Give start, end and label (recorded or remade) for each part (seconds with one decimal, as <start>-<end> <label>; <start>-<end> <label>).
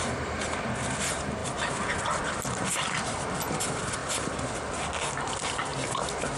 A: 0.0-1.4 remade; 1.4-2.3 recorded; 2.3-4.0 remade; 4.0-5.1 recorded; 5.1-5.7 remade; 5.7-6.4 recorded